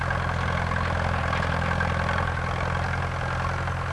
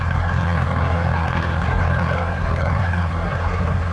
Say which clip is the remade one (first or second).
second